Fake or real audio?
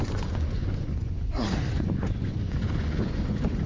fake